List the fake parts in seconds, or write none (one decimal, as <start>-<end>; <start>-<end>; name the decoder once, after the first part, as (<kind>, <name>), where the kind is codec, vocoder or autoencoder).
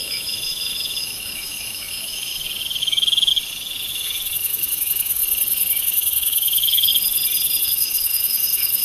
0.0-2.3 (autoencoder, DAC-VAE); 2.8-3.3; 3.9-5.2; 5.8-6.9; 7.6-8.8